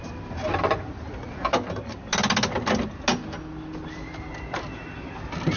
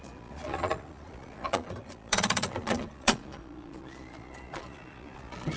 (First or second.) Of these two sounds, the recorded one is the first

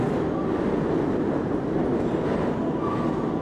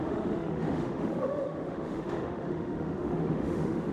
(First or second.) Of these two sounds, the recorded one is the first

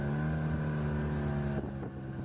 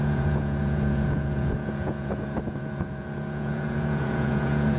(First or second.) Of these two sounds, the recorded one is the first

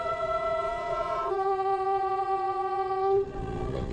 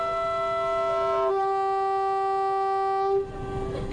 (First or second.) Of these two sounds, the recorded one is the second